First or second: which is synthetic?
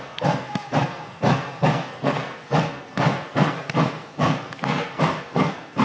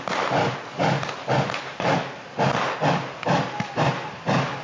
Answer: first